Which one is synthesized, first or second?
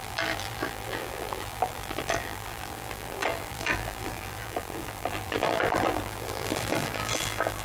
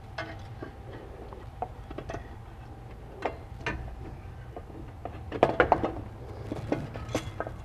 first